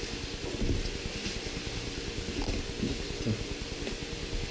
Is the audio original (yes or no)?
yes